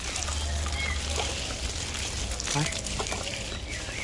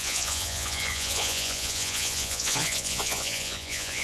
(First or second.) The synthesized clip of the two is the second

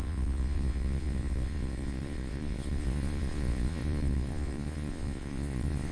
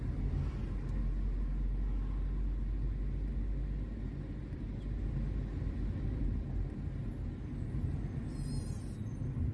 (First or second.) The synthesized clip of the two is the first